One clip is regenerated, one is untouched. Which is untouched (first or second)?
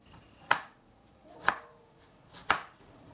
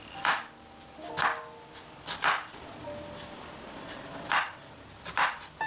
second